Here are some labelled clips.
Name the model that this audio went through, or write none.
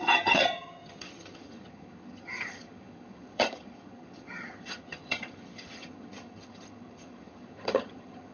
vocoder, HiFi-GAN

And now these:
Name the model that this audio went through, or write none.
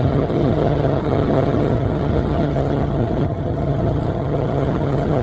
vocoder, HiFi-GAN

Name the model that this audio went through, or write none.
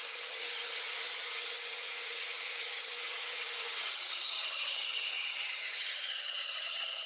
vocoder, HiFi-GAN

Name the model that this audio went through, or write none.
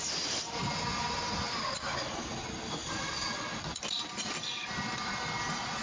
none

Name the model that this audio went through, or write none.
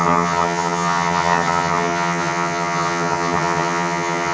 vocoder, HiFi-GAN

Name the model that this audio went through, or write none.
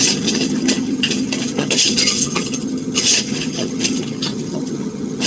vocoder, HiFi-GAN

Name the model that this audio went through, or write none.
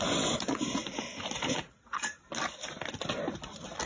none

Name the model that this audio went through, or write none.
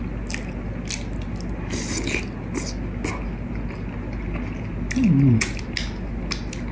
none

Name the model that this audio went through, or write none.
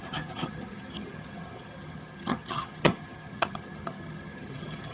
vocoder, HiFi-GAN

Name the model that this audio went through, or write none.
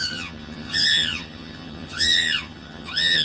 vocoder, HiFi-GAN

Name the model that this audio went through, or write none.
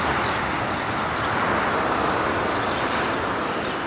none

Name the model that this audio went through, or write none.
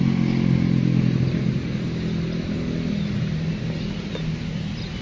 none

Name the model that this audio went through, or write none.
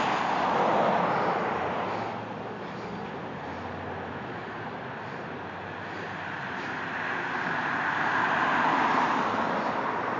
none